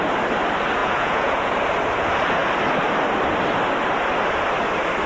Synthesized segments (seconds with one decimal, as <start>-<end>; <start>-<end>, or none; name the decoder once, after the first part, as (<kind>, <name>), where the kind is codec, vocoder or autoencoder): 0.8-1.5 (vocoder, Vocos)